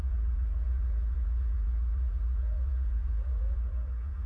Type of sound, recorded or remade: remade